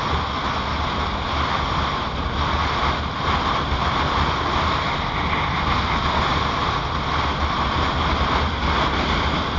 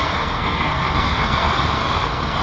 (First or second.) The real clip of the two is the first